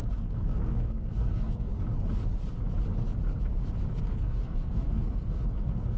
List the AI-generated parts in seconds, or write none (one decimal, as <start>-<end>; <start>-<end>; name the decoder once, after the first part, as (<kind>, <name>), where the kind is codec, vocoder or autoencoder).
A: 0.0-1.7 (codec, SNAC); 3.9-6.0